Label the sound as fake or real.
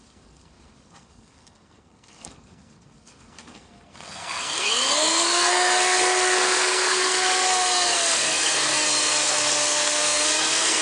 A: fake